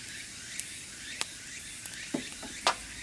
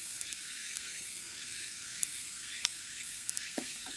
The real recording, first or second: first